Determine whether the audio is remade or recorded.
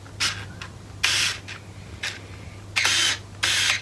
recorded